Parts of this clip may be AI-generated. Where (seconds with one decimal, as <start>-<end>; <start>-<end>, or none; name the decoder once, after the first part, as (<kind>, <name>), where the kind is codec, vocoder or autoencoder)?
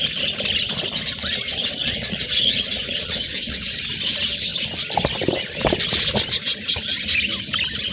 1.8-3.8 (vocoder, Vocos)